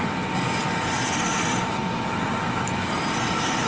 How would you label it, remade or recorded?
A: recorded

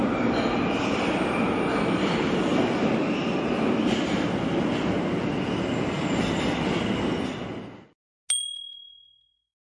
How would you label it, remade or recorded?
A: recorded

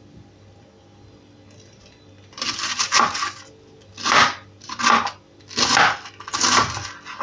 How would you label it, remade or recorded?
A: recorded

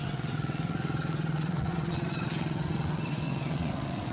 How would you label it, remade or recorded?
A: remade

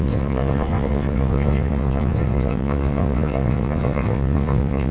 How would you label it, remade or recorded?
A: remade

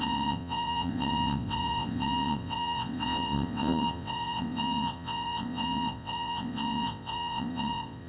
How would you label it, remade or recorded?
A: remade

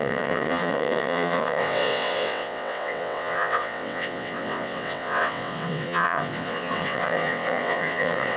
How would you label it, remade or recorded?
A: remade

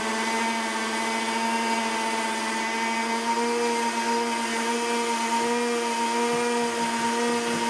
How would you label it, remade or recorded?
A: recorded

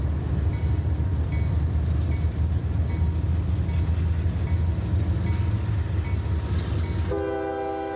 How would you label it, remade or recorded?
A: recorded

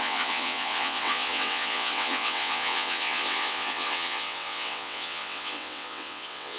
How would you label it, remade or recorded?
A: remade